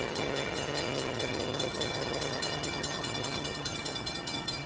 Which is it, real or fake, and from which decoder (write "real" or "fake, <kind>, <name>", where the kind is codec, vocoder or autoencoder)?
fake, vocoder, HiFi-GAN